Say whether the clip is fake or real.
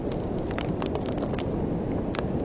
real